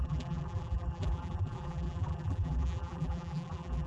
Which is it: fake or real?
fake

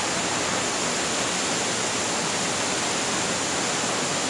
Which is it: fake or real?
real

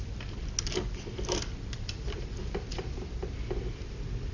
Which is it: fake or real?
real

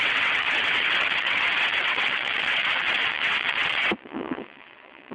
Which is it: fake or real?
fake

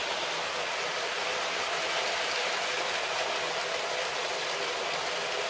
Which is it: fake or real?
real